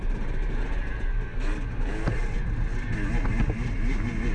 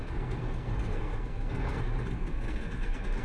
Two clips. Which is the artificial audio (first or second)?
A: second